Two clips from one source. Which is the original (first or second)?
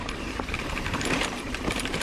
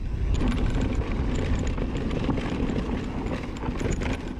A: second